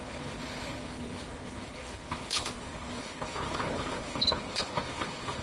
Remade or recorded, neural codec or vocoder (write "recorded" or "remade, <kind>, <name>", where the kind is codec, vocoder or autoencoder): remade, codec, HILCodec